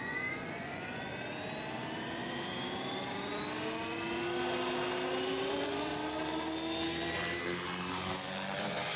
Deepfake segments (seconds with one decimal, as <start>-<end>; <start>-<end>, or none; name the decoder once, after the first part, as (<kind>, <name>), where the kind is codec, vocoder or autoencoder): 0.0-1.1 (vocoder, Vocos); 5.5-5.9; 8.6-9.0